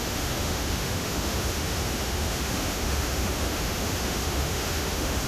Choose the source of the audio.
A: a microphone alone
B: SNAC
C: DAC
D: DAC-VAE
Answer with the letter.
D